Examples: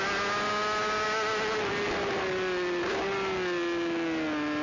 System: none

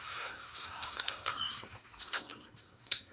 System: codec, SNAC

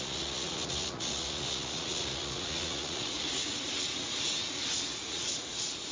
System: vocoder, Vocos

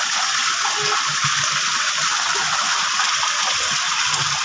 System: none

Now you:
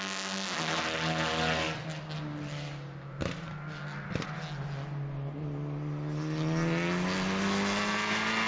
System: none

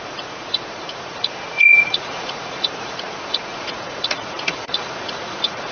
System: vocoder, Vocos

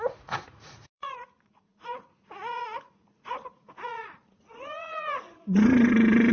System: vocoder, Vocos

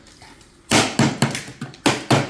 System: none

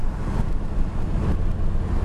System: none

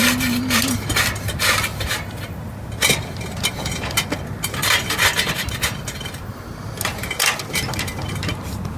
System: none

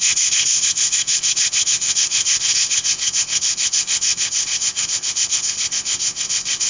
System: codec, ZipCodec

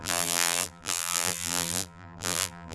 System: vocoder, BigVGAN v2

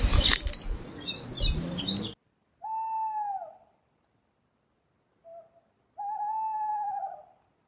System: none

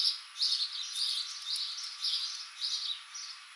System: none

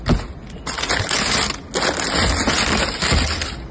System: none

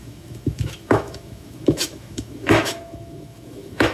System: autoencoder, DAC-VAE